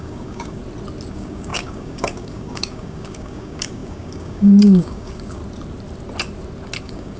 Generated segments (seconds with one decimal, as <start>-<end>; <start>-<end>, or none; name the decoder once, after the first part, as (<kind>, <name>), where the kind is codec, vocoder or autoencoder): 0.0-0.6 (codec, DAC); 1.1-5.4; 6.8-7.2